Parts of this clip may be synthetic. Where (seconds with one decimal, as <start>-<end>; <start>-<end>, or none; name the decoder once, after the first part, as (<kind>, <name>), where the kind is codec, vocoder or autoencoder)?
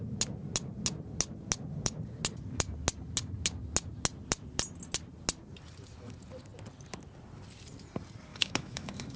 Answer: 8.3-9.2 (autoencoder, DAC-VAE)